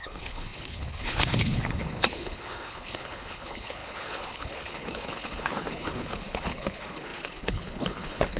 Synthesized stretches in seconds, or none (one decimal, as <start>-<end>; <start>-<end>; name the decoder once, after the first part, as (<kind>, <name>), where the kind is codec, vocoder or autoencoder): 0.0-8.4 (codec, HILCodec)